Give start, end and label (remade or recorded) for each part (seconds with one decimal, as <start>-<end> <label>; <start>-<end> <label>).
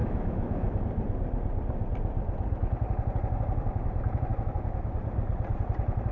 0.0-0.8 remade; 0.8-4.3 recorded; 4.3-4.9 remade; 4.9-6.1 recorded